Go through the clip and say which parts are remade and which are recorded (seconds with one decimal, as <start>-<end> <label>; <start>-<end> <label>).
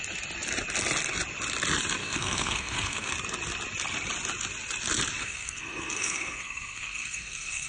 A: 0.0-2.0 recorded; 2.0-3.1 remade; 3.1-5.2 recorded; 5.2-7.7 remade